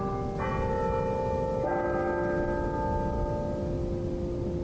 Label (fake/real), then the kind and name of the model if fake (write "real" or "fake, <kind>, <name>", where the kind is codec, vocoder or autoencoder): real